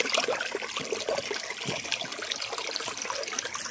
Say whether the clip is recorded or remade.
recorded